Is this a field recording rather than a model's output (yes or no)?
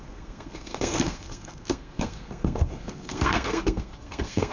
no